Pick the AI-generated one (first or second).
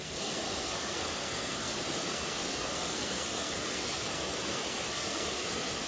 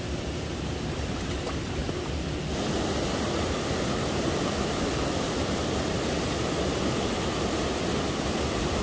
first